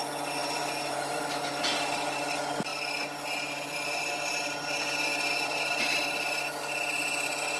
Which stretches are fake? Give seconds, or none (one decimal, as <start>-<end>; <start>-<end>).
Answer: 0.4-1.6; 2.7-4.0; 5.1-5.6